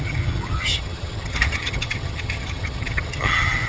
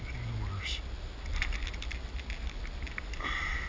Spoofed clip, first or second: first